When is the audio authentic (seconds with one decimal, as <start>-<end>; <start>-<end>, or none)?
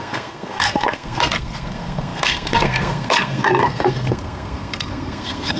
none